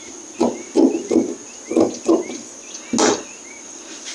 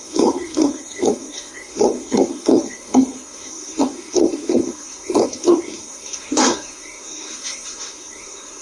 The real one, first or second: first